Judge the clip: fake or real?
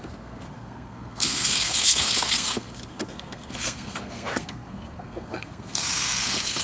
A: fake